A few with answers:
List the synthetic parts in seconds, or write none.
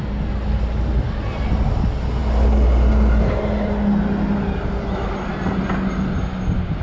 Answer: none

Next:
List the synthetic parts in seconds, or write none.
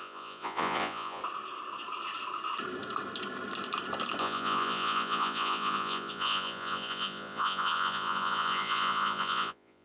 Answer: 0.0-1.2 (vocoder, Vocos); 4.2-9.8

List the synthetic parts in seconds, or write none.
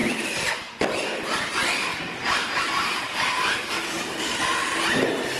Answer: 1.9-4.2 (vocoder, BigVGAN v2)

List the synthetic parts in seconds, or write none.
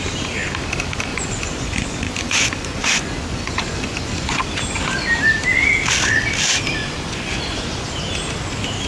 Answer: 1.1-4.6 (vocoder, Vocos); 6.8-7.8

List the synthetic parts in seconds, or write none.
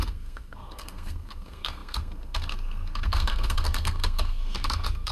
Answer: 0.0-5.1 (codec, SNAC)